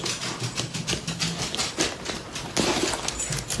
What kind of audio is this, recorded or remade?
recorded